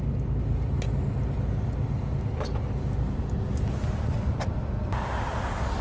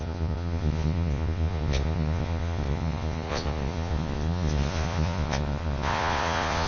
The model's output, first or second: second